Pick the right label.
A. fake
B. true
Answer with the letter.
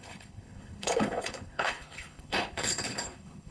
A